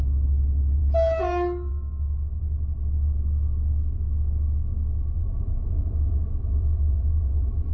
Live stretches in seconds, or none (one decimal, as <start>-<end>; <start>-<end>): 0.0-5.2